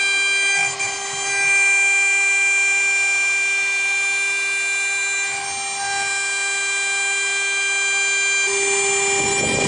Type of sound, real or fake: real